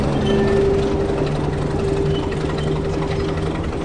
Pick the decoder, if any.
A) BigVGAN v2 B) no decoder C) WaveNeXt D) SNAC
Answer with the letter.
B